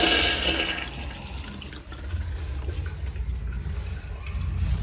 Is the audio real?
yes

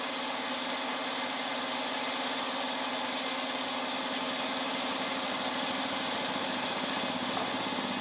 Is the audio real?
yes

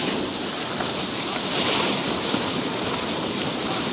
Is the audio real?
no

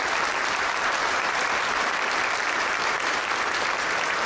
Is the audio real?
no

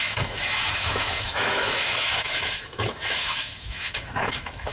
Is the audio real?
no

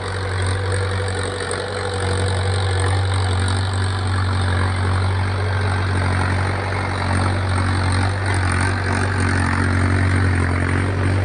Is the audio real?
yes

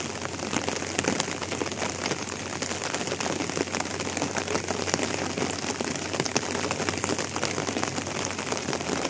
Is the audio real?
yes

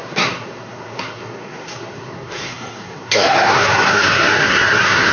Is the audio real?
no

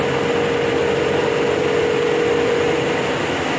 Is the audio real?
no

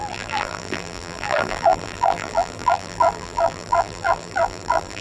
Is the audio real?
no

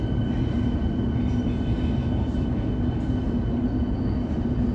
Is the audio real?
yes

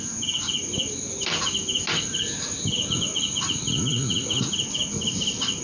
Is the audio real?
yes